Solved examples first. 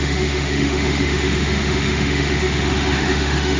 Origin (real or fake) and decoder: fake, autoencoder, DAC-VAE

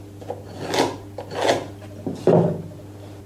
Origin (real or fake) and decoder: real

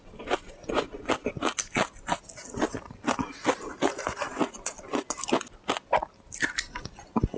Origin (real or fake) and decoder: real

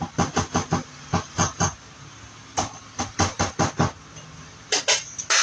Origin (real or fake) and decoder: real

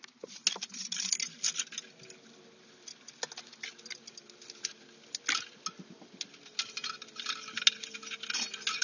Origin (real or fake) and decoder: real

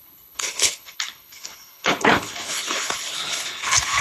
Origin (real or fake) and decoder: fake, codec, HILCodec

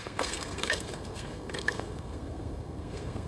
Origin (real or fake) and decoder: fake, codec, SNAC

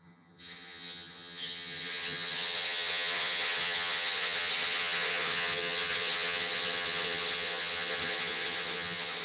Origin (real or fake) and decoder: fake, vocoder, HiFi-GAN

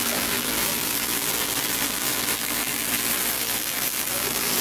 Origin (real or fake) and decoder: fake, vocoder, BigVGAN v2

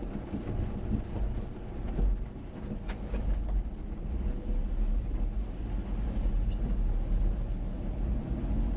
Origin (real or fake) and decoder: real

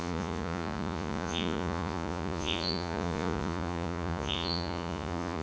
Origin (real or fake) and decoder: fake, vocoder, Vocos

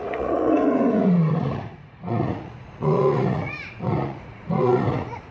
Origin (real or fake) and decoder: fake, vocoder, Vocos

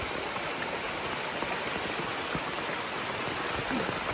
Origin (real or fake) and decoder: real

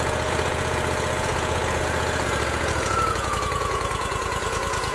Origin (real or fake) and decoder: fake, vocoder, Vocos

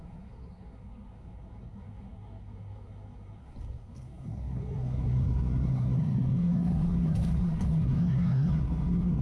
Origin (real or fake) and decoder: fake, codec, SNAC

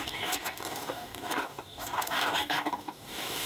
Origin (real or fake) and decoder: fake, codec, DAC